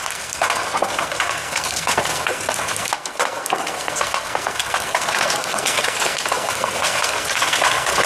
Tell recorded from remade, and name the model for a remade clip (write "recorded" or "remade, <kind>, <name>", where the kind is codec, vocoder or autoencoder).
remade, codec, SNAC